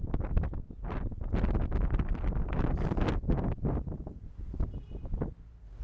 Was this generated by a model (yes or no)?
no